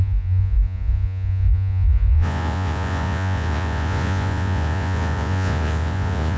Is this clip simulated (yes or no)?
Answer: yes